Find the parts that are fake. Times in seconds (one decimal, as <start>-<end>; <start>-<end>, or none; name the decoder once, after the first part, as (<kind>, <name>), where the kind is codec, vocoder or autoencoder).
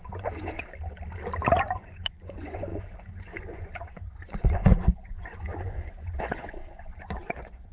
0.0-0.6 (vocoder, Vocos); 1.6-7.7